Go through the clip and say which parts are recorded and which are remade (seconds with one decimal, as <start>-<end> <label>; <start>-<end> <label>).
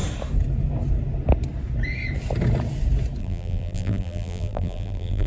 0.0-3.2 recorded; 3.2-5.3 remade